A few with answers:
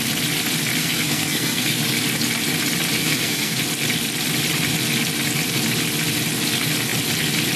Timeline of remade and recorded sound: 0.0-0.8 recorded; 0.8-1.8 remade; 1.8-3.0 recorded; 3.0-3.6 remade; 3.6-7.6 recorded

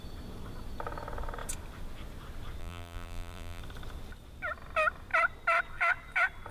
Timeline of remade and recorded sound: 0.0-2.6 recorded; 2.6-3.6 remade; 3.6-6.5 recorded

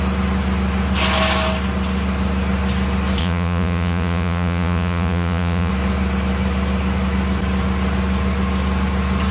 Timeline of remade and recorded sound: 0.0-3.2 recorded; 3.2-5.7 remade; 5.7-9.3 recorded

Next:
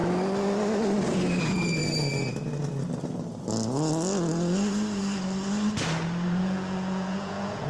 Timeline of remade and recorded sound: 0.0-1.4 recorded; 1.4-1.8 remade; 1.8-6.4 recorded; 6.4-7.7 remade

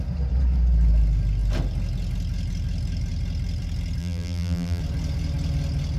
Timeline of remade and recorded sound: 0.0-4.0 recorded; 4.0-4.8 remade; 4.8-6.0 recorded